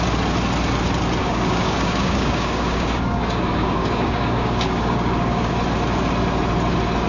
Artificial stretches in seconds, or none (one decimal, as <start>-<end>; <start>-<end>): 1.2-5.5